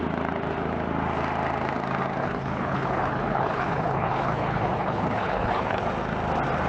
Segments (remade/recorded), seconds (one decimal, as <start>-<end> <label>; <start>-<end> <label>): 0.0-2.2 recorded; 2.2-5.8 remade; 5.8-6.7 recorded